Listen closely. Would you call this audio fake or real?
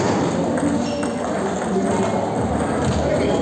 real